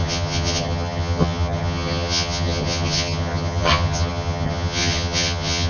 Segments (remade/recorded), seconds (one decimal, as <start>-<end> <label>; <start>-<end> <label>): 0.0-5.7 remade